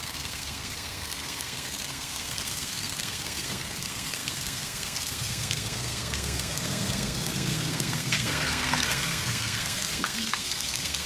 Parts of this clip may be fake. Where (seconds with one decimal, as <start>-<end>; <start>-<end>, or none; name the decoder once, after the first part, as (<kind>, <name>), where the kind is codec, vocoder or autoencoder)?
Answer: 0.0-11.1 (codec, SNAC)